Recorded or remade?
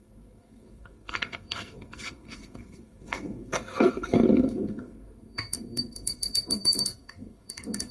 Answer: remade